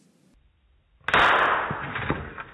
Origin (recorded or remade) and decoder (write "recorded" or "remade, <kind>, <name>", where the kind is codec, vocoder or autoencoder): recorded